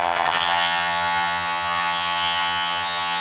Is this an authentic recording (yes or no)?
no